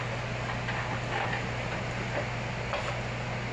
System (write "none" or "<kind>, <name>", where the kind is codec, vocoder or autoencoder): none